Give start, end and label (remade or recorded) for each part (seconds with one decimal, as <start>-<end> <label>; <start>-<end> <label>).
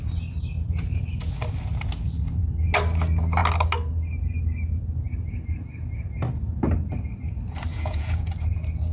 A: 0.0-7.7 recorded; 7.7-8.3 remade; 8.3-8.9 recorded